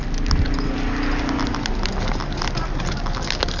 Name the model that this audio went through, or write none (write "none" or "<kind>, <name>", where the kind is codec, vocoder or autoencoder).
none